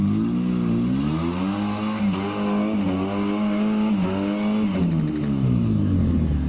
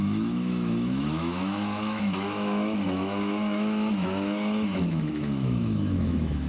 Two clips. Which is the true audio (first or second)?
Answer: first